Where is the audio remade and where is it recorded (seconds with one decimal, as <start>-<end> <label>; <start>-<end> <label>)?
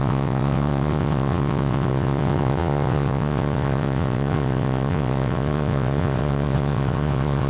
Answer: 0.0-7.5 remade